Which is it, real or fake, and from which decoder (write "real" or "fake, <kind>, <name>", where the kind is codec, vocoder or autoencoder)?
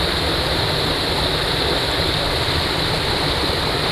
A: real